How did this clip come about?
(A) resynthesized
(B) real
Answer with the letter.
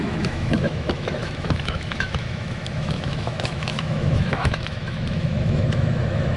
A